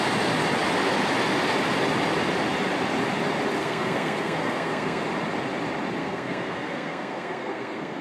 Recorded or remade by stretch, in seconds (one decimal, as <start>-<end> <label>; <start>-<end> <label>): 0.0-3.6 recorded; 3.6-5.0 remade; 5.0-6.0 recorded; 6.0-8.0 remade